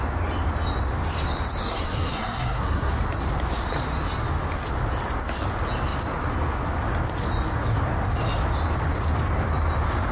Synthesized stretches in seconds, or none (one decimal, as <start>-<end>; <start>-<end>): 1.6-2.9